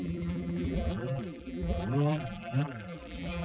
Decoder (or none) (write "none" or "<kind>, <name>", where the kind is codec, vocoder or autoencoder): vocoder, BigVGAN v2